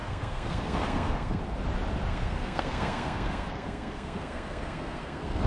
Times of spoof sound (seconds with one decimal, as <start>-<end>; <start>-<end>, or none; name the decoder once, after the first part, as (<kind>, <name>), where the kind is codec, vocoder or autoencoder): 0.0-1.4 (codec, SNAC); 2.1-5.5